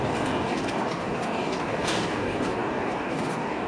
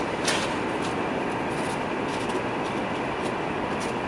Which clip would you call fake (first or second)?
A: first